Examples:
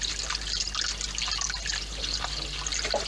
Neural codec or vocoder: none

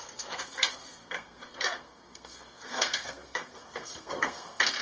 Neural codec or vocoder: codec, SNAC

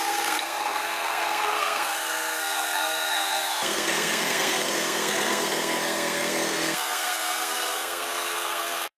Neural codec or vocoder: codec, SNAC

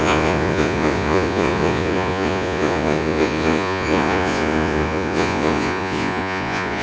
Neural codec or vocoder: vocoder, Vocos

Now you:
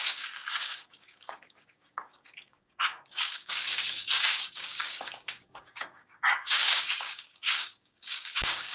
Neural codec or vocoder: codec, DAC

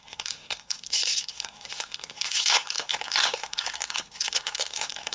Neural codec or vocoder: codec, SNAC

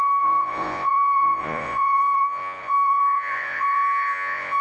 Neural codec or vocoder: vocoder, Vocos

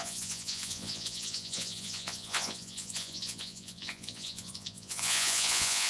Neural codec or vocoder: vocoder, Vocos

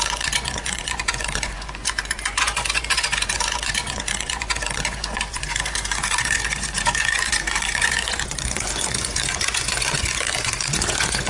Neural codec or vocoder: vocoder, Vocos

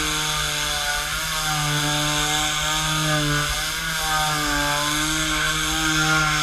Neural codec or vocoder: none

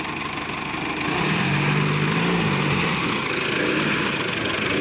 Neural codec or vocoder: none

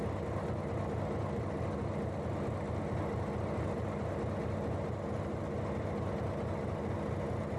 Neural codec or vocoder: none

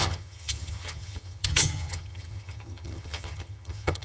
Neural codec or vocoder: vocoder, HiFi-GAN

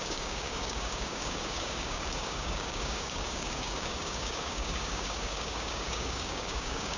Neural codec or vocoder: codec, DAC